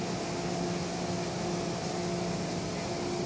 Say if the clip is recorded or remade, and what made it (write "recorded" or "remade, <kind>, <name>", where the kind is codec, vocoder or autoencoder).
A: recorded